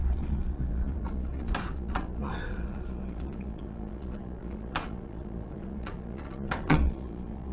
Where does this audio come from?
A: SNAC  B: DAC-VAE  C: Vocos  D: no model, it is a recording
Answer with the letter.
C